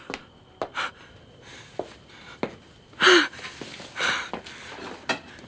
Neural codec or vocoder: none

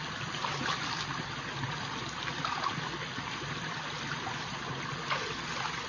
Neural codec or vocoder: none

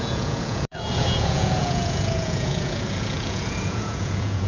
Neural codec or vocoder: vocoder, Vocos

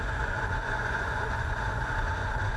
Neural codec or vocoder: vocoder, Vocos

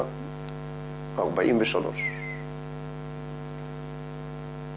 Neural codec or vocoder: none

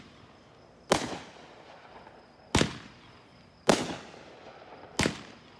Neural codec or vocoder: none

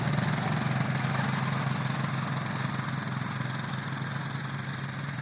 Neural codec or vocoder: none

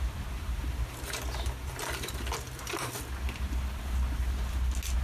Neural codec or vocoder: none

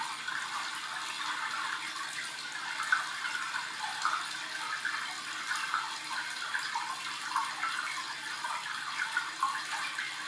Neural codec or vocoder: none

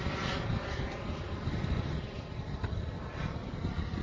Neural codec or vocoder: none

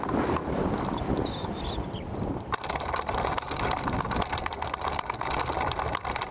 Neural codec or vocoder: none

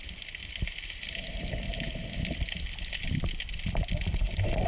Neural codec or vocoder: none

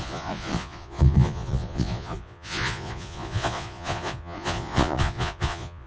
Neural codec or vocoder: vocoder, Vocos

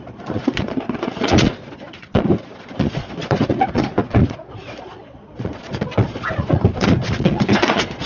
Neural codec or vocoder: vocoder, Vocos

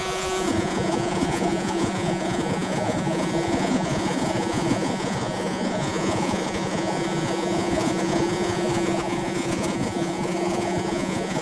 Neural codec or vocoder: vocoder, Vocos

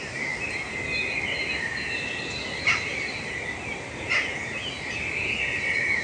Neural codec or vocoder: none